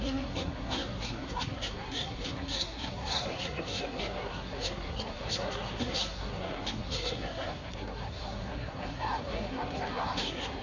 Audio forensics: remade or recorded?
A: remade